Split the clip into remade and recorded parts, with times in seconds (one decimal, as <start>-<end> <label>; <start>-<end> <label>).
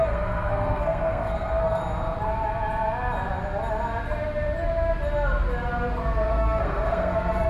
0.0-1.8 remade; 1.8-6.3 recorded; 6.3-7.5 remade